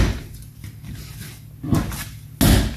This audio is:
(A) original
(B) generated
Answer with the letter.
A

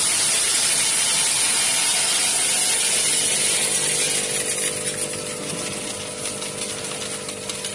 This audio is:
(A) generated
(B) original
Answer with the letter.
B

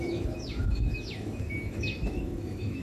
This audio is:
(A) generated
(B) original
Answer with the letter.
A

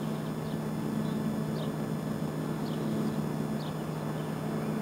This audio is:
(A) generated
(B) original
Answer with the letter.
B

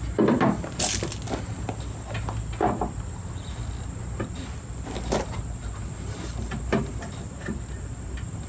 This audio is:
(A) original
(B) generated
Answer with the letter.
A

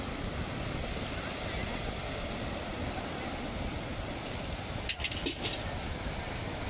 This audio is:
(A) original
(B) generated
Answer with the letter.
A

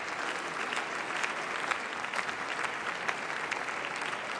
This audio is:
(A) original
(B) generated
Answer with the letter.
A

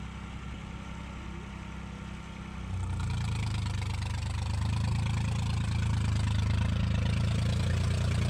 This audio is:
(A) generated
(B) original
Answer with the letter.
B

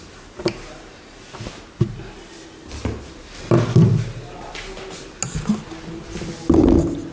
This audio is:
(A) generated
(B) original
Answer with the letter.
B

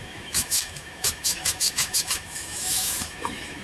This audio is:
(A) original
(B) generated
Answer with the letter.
B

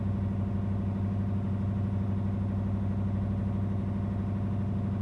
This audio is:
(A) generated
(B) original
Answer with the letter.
B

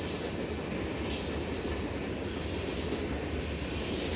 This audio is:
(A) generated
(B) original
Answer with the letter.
B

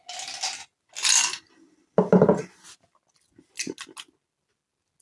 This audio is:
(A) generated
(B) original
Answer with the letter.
B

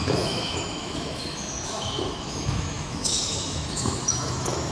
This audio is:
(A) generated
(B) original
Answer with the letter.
A